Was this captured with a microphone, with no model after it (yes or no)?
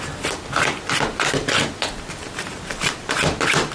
yes